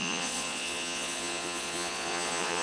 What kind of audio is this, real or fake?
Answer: fake